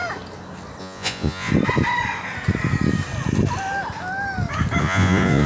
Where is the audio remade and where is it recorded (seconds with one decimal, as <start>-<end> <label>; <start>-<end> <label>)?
0.0-0.8 recorded; 0.8-1.5 remade; 1.5-4.8 recorded; 4.8-5.5 remade